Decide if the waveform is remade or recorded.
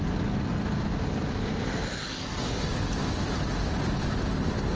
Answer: recorded